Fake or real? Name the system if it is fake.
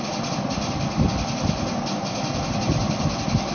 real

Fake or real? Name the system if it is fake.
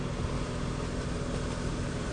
real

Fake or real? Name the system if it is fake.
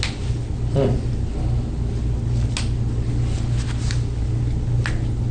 real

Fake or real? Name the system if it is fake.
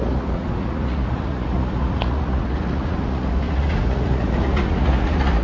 fake, vocoder, Vocos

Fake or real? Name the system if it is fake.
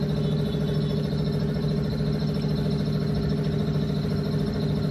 real